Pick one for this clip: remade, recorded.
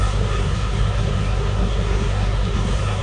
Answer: remade